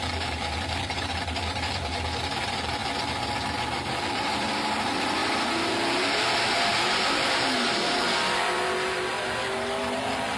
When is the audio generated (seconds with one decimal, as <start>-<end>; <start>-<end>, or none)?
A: 0.0-2.8; 3.5-5.2; 6.8-10.4